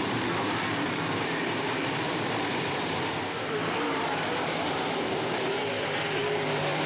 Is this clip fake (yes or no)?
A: yes